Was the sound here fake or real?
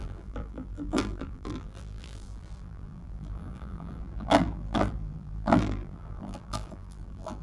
fake